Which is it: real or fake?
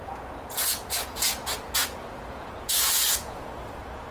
fake